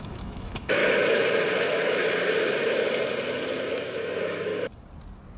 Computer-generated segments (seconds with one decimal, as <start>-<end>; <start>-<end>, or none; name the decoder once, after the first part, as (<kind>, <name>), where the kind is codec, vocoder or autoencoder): 0.0-0.8 (autoencoder, DAC-VAE); 1.6-2.0; 3.7-4.5